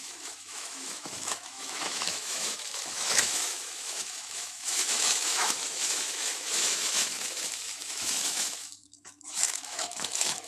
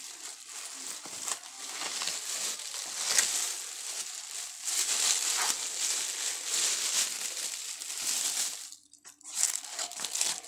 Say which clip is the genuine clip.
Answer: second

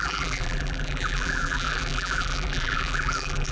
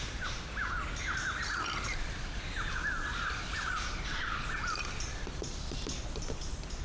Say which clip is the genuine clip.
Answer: second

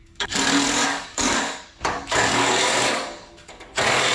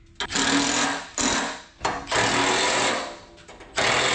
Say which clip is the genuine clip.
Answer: second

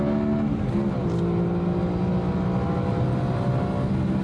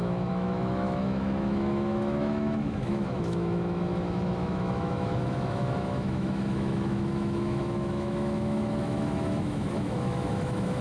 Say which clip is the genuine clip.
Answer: first